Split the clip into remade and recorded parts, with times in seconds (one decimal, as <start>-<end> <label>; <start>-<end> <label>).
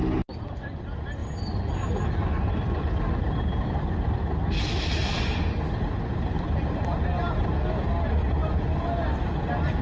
0.0-9.8 recorded